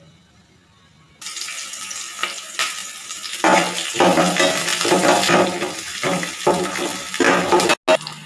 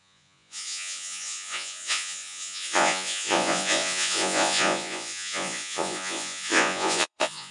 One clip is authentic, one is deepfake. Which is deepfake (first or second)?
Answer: second